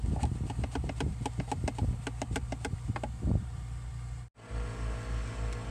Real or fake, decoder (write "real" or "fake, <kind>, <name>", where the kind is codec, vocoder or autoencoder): real